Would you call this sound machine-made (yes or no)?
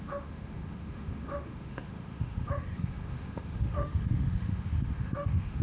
yes